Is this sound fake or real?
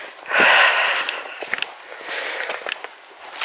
real